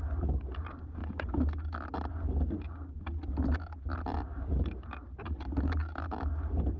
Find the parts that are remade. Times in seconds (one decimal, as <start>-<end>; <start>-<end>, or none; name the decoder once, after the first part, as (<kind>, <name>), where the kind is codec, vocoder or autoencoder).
none